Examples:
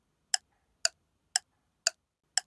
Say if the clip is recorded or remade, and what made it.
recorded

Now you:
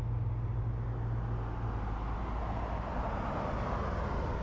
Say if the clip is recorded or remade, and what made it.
recorded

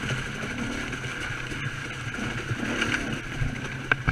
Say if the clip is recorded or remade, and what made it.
recorded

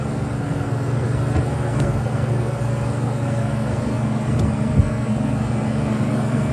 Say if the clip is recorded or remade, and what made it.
remade, codec, SNAC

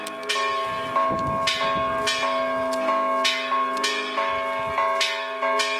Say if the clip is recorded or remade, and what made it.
recorded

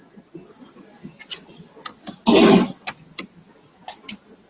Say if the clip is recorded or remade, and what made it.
recorded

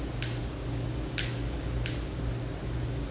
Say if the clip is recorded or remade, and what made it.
recorded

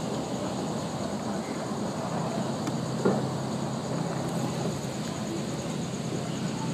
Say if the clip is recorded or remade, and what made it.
recorded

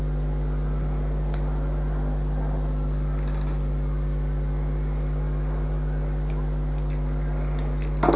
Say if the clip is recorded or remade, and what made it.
recorded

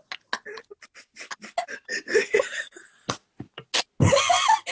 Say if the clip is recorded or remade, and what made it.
recorded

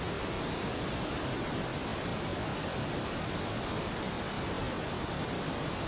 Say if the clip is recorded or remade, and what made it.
recorded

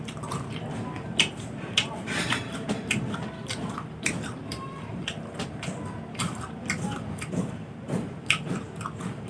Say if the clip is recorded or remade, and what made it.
remade, vocoder, BigVGAN v2